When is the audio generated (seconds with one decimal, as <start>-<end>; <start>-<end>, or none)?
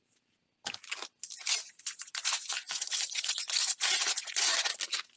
1.6-4.7